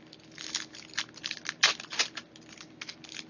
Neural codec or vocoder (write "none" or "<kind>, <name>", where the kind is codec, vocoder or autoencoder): none